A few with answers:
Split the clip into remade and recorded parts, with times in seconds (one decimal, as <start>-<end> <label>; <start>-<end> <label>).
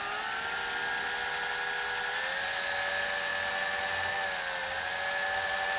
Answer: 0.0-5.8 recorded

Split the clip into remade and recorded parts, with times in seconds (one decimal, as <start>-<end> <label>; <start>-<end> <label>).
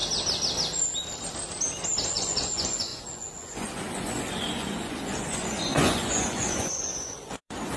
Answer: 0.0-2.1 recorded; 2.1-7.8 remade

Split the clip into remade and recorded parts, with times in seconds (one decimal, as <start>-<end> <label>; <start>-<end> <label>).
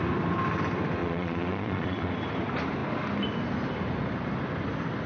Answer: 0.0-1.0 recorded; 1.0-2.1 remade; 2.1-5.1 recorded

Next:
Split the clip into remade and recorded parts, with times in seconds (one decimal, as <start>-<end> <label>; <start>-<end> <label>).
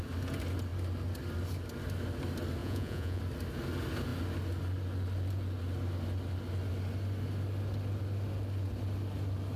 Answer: 0.0-2.6 recorded; 2.6-3.2 remade; 3.2-9.6 recorded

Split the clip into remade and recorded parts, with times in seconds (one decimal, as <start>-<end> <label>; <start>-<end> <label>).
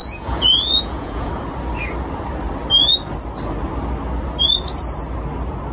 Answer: 0.0-1.3 remade; 1.3-5.7 recorded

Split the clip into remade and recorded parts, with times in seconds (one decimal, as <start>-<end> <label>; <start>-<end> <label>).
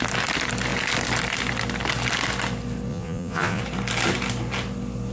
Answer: 0.0-2.9 recorded; 2.9-3.6 remade; 3.6-5.1 recorded